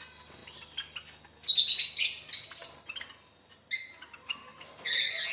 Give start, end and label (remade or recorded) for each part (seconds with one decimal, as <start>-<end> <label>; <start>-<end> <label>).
0.0-5.3 recorded